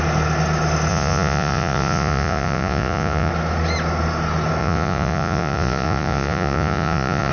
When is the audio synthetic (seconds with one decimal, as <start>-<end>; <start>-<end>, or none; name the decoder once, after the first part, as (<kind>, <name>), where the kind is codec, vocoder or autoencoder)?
0.9-3.3 (vocoder, Vocos); 4.6-7.3